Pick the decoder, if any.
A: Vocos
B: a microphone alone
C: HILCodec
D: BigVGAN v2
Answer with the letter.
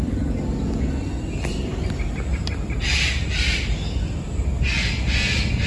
B